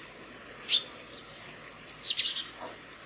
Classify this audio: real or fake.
real